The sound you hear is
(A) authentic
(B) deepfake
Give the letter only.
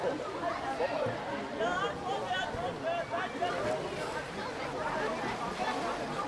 A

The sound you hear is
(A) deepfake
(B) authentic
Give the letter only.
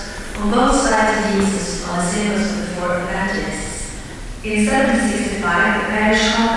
B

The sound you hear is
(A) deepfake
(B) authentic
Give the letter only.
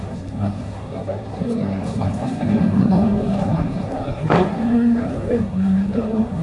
A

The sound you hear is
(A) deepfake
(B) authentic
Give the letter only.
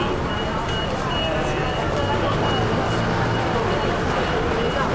B